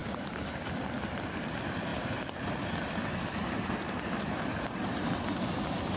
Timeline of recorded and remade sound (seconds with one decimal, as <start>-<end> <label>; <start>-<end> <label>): 0.0-0.8 remade; 0.8-1.9 recorded; 1.9-5.5 remade; 5.5-6.0 recorded